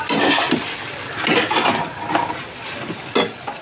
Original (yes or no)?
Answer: yes